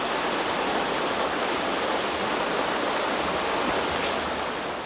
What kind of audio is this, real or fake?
real